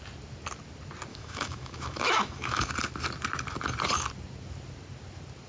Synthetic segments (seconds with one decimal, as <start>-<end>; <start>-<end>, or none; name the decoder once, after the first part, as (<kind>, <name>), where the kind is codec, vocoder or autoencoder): 1.1-2.7 (autoencoder, DAC-VAE)